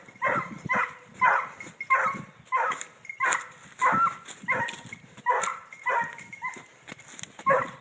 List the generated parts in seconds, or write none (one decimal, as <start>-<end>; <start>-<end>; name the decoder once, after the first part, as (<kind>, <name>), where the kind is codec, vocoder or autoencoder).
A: 5.5-6.2 (vocoder, BigVGAN v2)